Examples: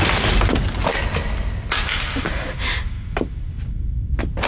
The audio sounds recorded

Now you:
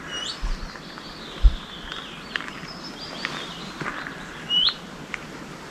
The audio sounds recorded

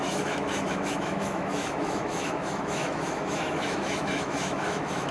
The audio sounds remade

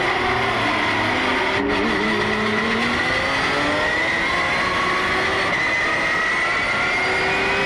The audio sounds recorded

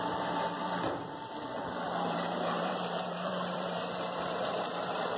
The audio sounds remade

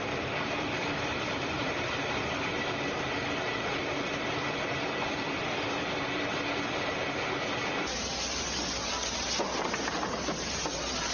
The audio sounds remade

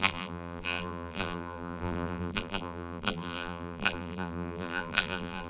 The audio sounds remade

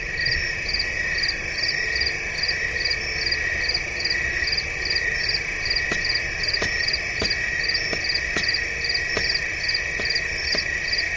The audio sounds recorded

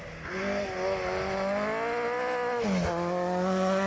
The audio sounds recorded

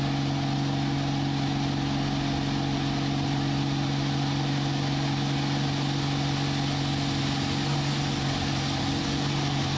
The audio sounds recorded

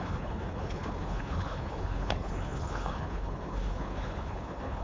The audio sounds remade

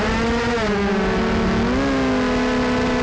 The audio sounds recorded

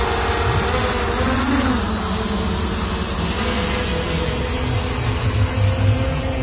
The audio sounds recorded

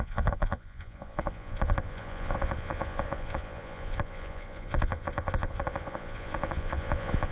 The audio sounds remade